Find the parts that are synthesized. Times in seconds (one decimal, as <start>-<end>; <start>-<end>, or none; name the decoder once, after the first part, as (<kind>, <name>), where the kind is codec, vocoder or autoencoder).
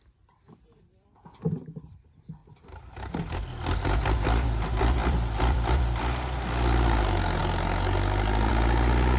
2.4-3.1 (vocoder, BigVGAN v2)